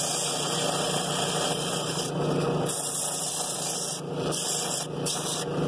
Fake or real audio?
real